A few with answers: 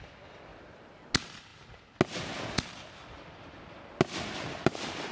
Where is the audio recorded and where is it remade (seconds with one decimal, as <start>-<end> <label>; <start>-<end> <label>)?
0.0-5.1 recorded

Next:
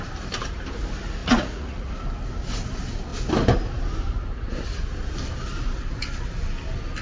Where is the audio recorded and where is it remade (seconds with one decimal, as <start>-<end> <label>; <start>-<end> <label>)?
0.0-1.2 recorded; 1.2-1.9 remade; 1.9-7.0 recorded

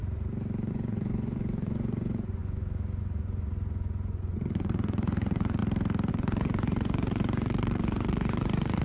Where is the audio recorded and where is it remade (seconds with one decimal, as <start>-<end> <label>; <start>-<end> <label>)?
0.0-0.7 recorded; 0.7-5.6 remade; 5.6-6.1 recorded; 6.1-8.8 remade

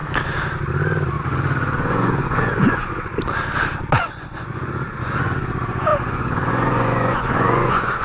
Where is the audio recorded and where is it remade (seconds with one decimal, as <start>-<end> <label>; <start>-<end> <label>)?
0.0-1.2 recorded; 1.2-3.1 remade; 3.1-4.0 recorded; 4.0-8.0 remade

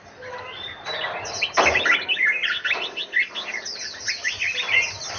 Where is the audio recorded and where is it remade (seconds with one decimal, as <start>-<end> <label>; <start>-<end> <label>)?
0.0-5.2 recorded